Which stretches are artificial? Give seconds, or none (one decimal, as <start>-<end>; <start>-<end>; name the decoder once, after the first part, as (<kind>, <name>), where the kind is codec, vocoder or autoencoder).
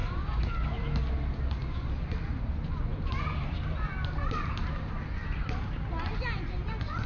none